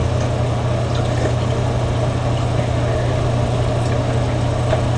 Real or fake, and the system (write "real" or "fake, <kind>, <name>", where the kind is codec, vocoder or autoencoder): real